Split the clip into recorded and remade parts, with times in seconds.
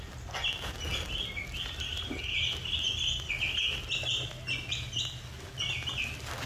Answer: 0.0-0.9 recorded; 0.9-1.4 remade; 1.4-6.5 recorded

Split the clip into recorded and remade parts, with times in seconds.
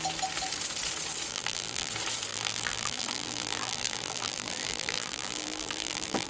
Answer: 0.0-1.3 recorded; 1.3-1.9 remade; 1.9-2.3 recorded; 2.3-6.3 remade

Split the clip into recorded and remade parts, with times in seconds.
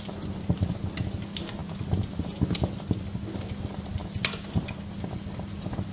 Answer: 0.0-5.9 recorded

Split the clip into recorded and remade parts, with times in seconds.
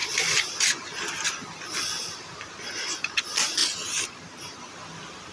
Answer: 0.0-3.6 recorded; 3.6-4.7 remade; 4.7-5.3 recorded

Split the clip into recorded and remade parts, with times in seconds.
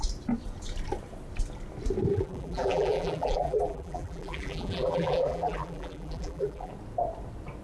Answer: 0.0-2.1 recorded; 2.1-6.7 remade; 6.7-7.6 recorded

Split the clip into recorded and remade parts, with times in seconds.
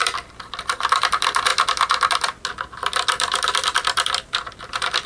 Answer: 0.0-1.5 remade; 1.5-2.5 recorded; 2.5-5.1 remade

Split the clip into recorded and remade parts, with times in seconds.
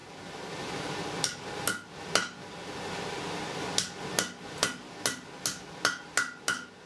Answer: 0.0-6.9 recorded